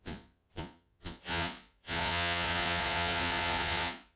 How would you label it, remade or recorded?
remade